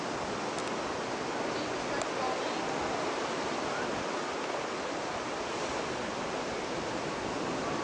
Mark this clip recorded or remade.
recorded